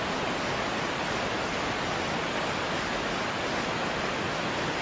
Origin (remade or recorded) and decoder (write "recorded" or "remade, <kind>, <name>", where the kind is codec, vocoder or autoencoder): recorded